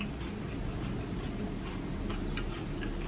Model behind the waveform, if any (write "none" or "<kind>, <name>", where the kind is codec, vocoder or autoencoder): none